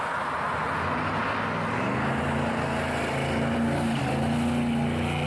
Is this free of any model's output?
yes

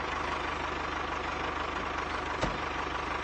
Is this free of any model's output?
yes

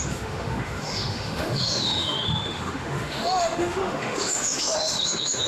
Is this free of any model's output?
no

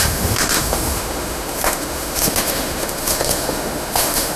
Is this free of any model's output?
no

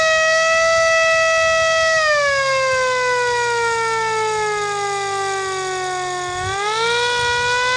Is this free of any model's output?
yes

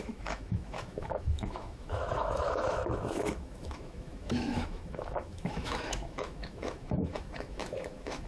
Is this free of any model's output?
no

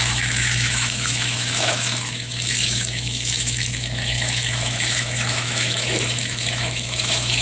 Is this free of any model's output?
no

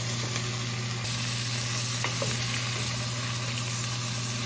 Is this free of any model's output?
yes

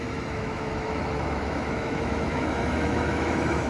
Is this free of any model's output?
no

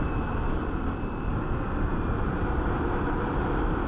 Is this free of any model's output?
yes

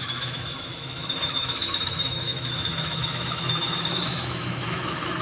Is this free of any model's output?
no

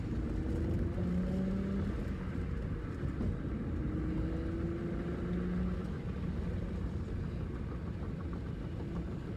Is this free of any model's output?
yes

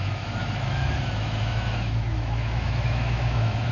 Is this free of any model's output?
no